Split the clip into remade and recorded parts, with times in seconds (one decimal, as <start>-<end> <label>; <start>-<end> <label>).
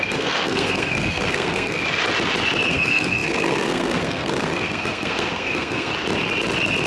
0.0-1.8 remade; 1.8-2.7 recorded; 2.7-5.9 remade; 5.9-6.9 recorded